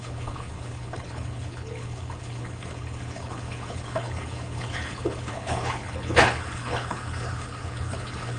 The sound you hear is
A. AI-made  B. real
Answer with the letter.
A